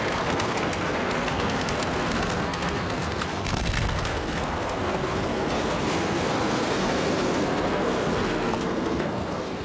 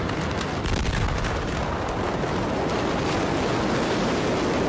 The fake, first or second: first